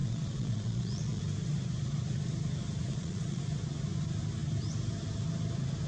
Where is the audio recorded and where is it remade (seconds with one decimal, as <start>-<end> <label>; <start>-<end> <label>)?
0.0-1.2 remade; 1.2-2.9 recorded; 2.9-3.4 remade; 3.4-5.9 recorded